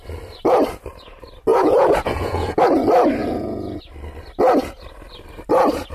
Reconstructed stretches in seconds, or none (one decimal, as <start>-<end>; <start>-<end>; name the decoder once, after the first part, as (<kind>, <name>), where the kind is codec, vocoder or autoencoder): 1.5-2.6 (vocoder, Vocos); 3.2-3.8